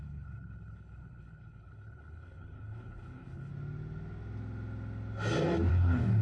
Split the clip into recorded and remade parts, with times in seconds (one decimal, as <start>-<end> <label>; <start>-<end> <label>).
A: 0.0-3.5 remade; 3.5-5.7 recorded; 5.7-6.2 remade